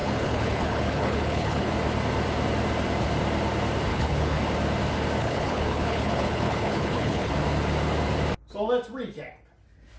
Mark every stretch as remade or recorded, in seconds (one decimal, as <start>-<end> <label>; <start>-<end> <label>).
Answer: 0.0-1.7 remade; 1.7-3.9 recorded; 3.9-4.4 remade; 4.4-5.2 recorded; 5.2-7.3 remade; 7.3-10.0 recorded